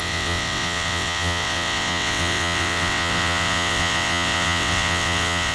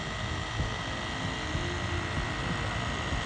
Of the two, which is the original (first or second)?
second